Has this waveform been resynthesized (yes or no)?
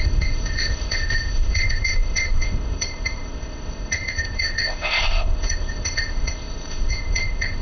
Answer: yes